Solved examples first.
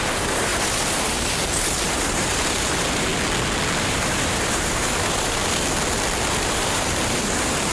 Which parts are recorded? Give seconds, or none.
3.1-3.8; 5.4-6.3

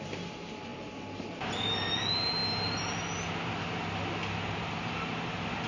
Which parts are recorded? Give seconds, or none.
0.0-5.7

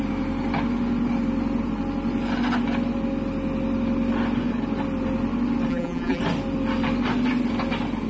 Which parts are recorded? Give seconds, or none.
0.0-5.7; 6.2-8.1

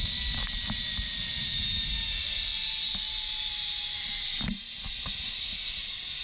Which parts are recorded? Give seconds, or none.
2.5-3.4

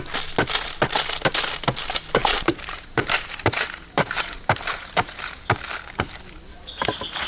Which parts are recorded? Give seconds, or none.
0.0-2.2; 5.4-7.3

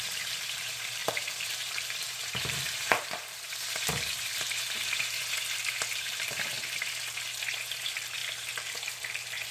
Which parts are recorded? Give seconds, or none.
6.5-7.5

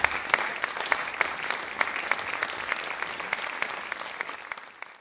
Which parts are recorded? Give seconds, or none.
0.0-0.5; 1.9-5.0